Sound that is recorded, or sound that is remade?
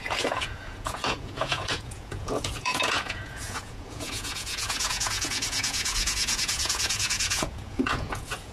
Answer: remade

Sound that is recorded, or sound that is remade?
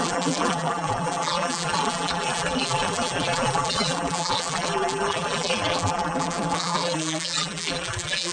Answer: remade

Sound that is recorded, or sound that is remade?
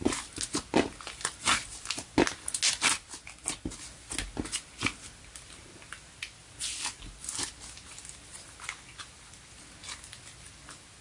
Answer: recorded